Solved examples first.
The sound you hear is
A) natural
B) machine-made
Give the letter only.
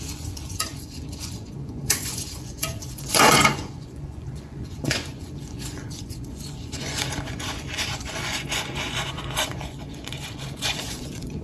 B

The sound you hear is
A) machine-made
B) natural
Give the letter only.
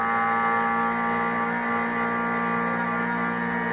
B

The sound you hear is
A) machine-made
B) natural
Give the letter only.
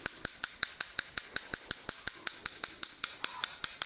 B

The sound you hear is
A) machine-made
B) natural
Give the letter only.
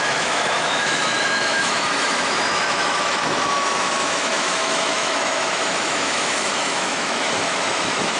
A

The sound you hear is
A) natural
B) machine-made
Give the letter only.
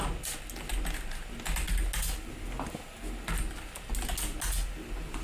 A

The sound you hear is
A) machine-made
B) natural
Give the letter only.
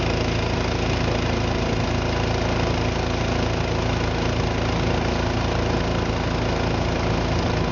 B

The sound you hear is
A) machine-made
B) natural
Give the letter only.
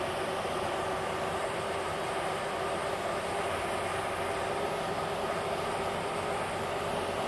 B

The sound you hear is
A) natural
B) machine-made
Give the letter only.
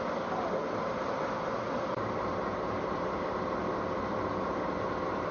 A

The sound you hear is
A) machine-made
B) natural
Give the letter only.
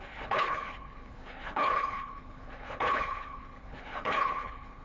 A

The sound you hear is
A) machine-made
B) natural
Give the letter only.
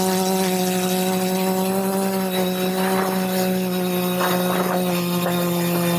B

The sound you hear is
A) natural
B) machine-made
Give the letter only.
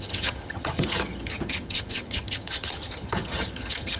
B